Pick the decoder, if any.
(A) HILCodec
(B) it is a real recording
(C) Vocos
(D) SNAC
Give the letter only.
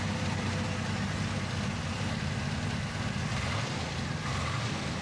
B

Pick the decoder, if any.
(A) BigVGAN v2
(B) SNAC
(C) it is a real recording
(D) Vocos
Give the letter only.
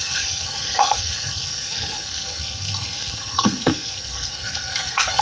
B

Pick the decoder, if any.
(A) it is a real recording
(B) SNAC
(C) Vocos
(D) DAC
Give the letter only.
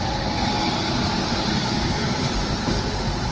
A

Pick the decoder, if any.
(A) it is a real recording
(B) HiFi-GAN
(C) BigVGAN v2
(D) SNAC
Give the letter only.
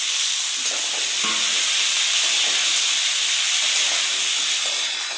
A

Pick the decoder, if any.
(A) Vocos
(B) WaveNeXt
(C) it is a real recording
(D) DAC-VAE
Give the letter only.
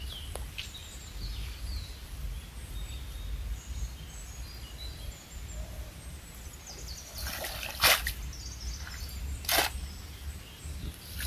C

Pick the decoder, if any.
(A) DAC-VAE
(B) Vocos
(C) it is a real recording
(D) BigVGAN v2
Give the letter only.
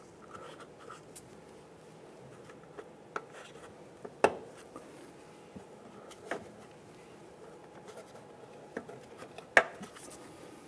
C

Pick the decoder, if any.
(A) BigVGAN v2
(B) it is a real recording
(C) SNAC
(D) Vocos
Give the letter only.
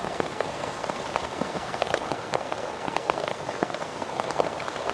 C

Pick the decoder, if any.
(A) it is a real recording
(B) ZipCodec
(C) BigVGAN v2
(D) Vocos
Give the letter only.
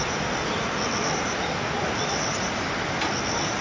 A